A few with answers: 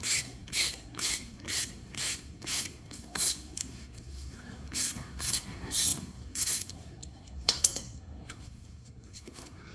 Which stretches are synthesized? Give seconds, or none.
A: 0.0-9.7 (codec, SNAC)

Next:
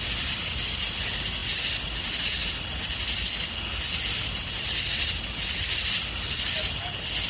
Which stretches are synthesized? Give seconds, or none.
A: none